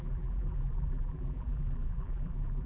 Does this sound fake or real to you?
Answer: fake